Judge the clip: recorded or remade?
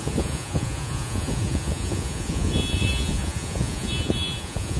remade